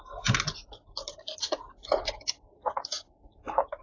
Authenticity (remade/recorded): recorded